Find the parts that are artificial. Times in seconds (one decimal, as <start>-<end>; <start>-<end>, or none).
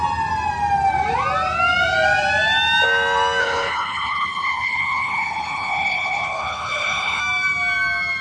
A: 3.4-7.2